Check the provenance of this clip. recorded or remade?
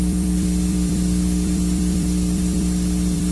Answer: remade